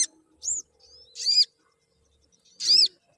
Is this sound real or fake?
real